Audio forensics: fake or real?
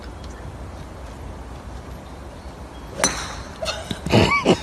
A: real